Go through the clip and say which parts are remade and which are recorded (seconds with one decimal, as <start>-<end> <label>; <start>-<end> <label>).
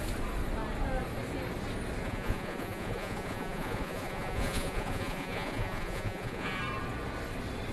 0.0-2.0 recorded; 2.0-6.6 remade; 6.6-7.7 recorded